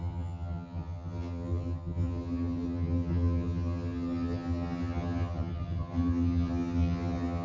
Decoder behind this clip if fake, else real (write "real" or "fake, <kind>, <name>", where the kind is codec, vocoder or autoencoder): fake, vocoder, HiFi-GAN